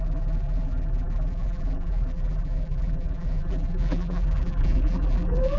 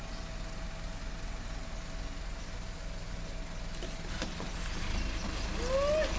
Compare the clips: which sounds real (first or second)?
second